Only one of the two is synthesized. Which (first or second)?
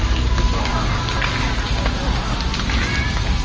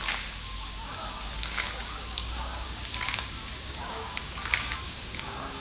second